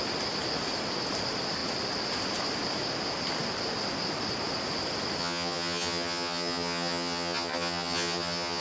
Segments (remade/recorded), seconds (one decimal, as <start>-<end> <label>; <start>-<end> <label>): 0.0-5.2 recorded; 5.2-8.6 remade